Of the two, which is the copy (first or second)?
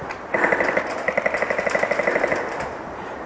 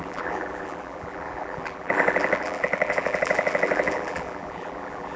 second